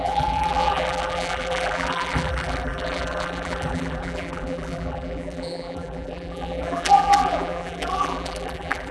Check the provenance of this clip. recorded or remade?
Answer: remade